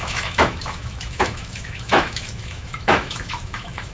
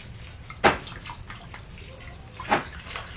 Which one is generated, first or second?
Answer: first